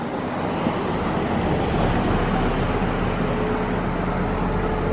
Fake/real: real